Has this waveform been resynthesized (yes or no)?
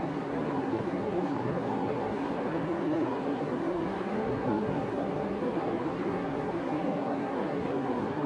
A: yes